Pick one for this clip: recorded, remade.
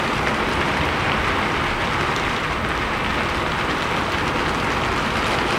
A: recorded